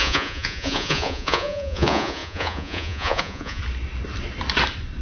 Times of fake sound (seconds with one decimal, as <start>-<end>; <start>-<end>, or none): 0.0-3.6